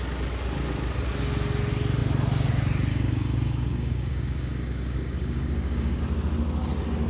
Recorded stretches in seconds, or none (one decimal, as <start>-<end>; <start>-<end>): 0.0-2.9; 6.0-7.1